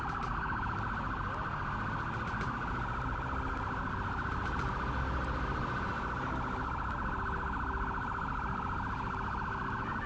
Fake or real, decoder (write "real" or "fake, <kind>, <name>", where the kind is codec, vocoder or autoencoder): real